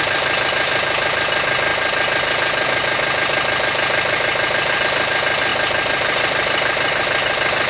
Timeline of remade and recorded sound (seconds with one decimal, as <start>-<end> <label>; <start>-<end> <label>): 0.0-7.7 recorded